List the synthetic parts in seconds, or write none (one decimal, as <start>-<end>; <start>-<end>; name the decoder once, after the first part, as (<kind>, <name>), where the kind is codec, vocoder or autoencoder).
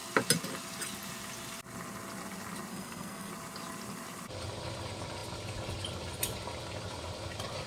2.7-3.3 (codec, SNAC)